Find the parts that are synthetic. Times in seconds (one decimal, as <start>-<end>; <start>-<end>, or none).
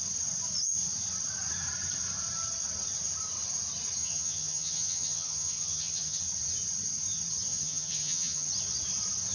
4.0-6.2; 7.5-8.5